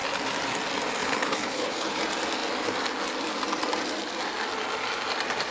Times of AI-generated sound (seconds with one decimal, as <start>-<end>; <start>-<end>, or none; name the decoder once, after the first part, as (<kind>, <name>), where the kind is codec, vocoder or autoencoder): 1.0-2.0 (codec, HILCodec)